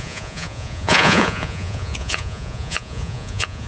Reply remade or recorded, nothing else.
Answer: remade